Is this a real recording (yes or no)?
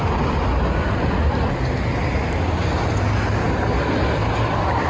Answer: yes